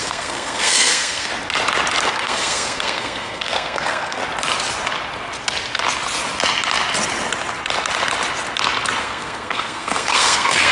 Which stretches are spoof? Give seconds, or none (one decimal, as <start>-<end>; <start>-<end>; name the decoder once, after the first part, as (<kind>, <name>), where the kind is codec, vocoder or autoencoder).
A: 0.0-1.3 (codec, SNAC); 2.1-4.2; 9.0-10.7